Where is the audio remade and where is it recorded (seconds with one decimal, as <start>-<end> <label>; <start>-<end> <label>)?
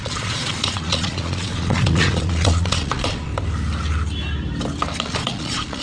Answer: 0.0-3.3 remade; 3.3-5.0 recorded; 5.0-5.8 remade